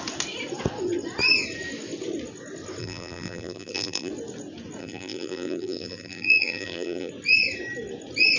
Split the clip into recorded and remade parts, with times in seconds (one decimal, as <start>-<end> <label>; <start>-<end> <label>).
0.0-2.8 recorded; 2.8-4.1 remade; 4.1-4.8 recorded; 4.8-7.1 remade; 7.1-8.4 recorded